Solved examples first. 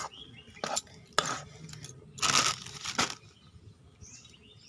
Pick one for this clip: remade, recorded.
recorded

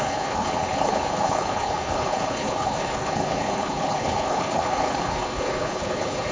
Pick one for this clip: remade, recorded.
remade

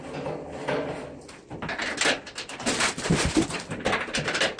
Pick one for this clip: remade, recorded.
recorded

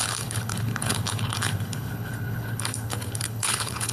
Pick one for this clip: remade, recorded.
remade